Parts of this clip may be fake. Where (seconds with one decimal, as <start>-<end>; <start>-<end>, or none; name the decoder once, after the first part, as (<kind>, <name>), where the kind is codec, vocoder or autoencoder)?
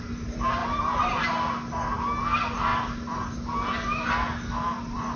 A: 0.6-1.2 (vocoder, BigVGAN v2)